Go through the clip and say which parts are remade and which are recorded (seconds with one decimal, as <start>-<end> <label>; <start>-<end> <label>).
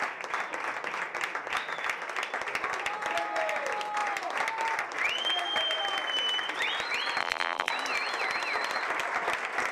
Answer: 0.0-7.2 recorded; 7.2-7.7 remade; 7.7-9.7 recorded